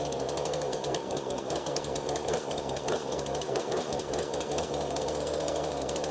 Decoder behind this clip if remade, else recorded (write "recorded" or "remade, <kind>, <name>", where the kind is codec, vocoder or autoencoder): remade, codec, SNAC